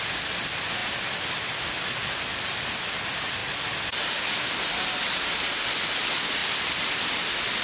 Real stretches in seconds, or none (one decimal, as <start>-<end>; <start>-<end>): 0.0-0.8; 2.2-3.4; 4.9-6.4